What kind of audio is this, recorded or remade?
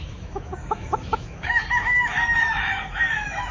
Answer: remade